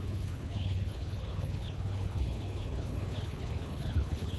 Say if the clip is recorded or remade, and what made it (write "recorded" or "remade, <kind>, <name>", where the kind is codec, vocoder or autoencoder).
remade, codec, HILCodec